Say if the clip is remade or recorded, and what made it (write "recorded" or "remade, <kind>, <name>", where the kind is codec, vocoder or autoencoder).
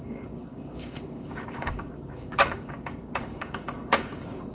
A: remade, codec, DAC